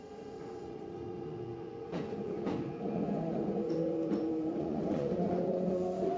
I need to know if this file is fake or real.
fake